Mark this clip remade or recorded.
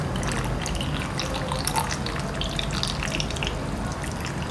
recorded